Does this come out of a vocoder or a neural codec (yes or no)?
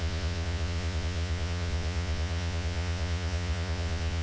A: yes